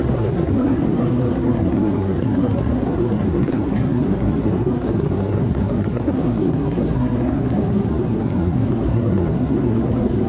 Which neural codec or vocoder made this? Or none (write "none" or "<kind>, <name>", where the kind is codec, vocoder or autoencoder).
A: codec, SNAC